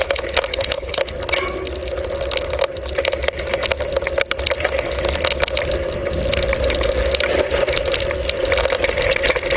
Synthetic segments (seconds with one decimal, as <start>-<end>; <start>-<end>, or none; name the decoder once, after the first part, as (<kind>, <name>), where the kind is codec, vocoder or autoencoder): 0.5-1.0 (codec, HILCodec)